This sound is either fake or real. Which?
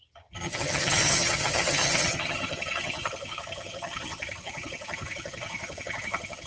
fake